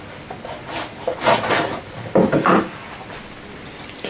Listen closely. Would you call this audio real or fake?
real